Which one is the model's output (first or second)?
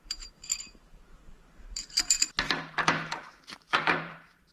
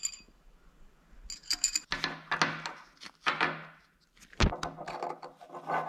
first